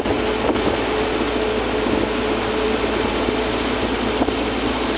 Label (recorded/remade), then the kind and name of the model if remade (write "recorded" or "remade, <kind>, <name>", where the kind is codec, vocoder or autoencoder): recorded